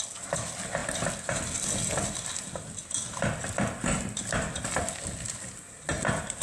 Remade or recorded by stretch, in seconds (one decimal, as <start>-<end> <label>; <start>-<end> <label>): 0.0-0.8 recorded; 0.8-4.6 remade; 4.6-6.4 recorded